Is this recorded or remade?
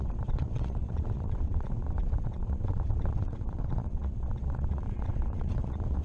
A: remade